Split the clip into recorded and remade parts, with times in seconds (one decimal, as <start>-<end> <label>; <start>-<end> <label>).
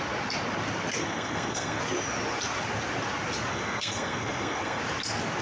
0.0-1.0 recorded; 1.0-1.8 remade; 1.8-3.5 recorded; 3.5-4.8 remade; 4.8-5.4 recorded